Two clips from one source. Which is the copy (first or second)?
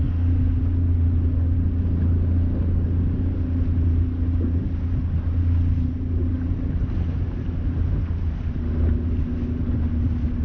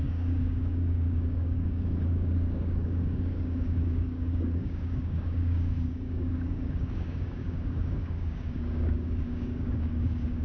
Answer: second